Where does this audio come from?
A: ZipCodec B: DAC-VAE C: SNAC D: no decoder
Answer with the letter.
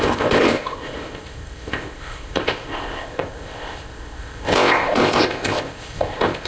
A